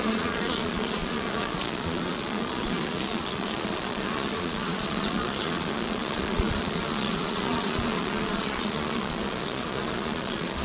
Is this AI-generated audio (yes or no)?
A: yes